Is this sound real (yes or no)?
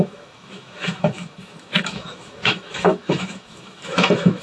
no